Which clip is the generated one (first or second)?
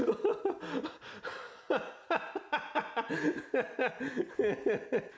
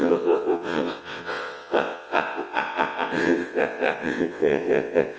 second